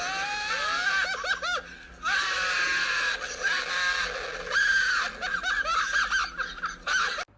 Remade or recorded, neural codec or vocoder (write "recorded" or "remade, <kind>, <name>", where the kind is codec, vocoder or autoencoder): recorded